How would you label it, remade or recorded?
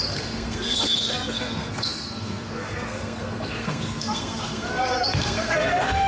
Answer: remade